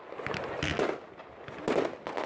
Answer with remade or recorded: recorded